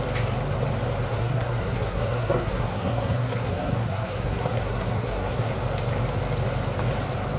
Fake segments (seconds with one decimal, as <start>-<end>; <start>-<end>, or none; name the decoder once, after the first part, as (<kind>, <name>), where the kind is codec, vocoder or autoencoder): 1.1-5.5 (codec, SNAC)